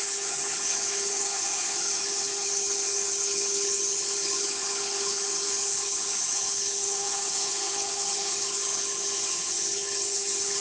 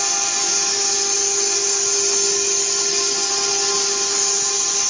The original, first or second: second